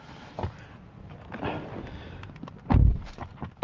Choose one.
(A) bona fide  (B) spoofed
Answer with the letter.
A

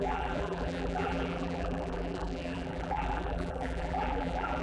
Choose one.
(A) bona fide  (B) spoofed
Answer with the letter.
B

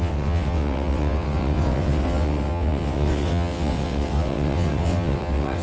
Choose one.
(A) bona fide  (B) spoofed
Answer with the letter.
B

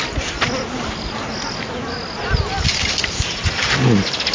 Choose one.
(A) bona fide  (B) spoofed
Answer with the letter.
A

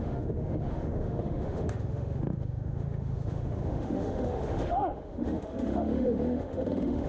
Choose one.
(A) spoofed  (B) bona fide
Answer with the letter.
A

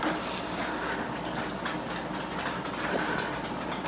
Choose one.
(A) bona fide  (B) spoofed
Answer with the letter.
A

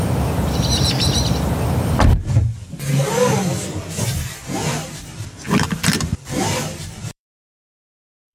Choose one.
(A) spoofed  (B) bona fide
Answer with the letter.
A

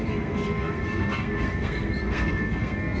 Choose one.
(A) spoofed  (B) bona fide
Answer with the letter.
A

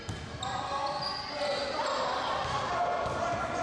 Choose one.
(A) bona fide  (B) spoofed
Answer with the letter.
A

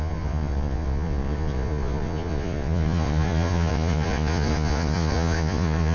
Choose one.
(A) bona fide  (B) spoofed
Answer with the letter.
B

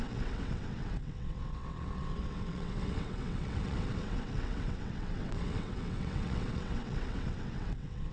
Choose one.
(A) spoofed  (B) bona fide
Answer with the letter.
A